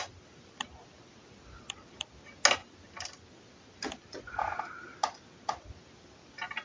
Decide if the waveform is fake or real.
real